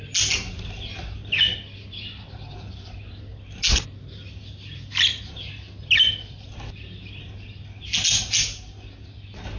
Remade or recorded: recorded